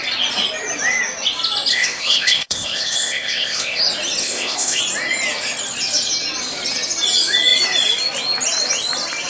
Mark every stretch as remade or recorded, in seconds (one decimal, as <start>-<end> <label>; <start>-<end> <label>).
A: 0.0-1.7 recorded; 1.7-3.8 remade; 3.8-4.2 recorded; 4.2-4.8 remade; 4.8-9.3 recorded